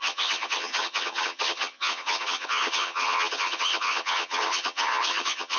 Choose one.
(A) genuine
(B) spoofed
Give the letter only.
B